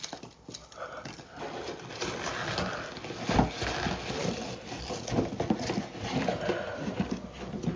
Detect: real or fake real